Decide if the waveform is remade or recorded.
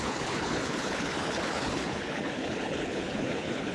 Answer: remade